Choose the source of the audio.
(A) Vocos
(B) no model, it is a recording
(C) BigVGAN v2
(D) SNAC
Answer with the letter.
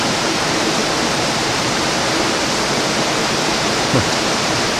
C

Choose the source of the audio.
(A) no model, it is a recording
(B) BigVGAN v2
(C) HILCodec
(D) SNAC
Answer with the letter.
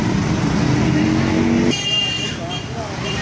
A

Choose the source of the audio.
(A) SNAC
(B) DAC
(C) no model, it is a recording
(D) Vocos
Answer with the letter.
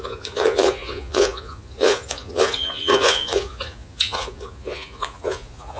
D